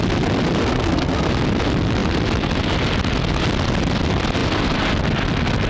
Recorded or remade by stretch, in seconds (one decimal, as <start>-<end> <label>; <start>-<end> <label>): 0.0-0.6 recorded; 0.6-1.3 remade; 1.3-5.7 recorded